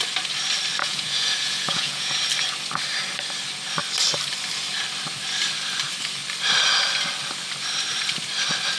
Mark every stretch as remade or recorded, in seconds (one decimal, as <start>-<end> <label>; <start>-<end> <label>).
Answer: 0.0-0.8 recorded; 0.8-2.2 remade; 2.2-8.8 recorded